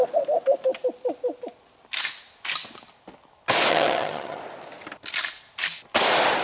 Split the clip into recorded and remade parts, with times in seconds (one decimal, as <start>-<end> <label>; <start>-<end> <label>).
0.0-3.7 recorded; 3.7-4.4 remade; 4.4-6.4 recorded